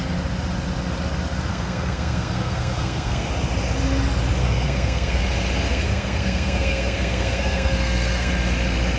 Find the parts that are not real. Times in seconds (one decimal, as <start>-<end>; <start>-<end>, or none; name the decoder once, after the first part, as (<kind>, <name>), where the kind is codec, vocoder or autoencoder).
1.5-3.3 (codec, SNAC); 4.4-5.2; 5.7-8.3